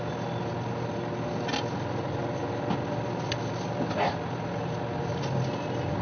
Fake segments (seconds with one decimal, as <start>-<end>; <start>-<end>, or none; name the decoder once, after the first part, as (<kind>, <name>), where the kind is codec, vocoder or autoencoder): none